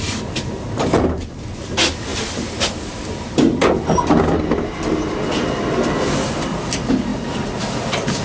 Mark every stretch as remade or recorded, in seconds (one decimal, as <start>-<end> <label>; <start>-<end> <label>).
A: 0.0-2.1 recorded; 2.1-3.6 remade; 3.6-7.1 recorded; 7.1-7.6 remade; 7.6-8.2 recorded